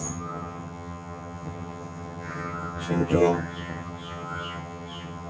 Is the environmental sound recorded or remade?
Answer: remade